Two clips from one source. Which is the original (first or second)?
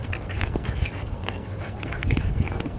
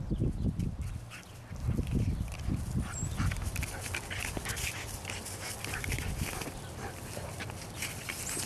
second